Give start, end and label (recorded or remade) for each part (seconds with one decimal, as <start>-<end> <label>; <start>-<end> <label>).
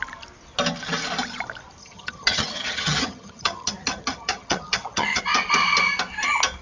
0.0-1.8 recorded; 1.8-5.2 remade; 5.2-6.6 recorded